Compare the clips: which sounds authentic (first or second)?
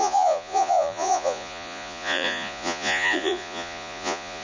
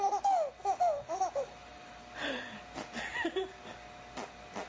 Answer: second